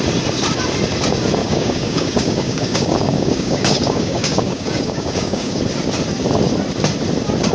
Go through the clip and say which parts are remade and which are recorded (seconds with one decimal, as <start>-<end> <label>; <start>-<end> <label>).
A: 0.0-1.4 recorded; 1.4-5.6 remade; 5.6-7.5 recorded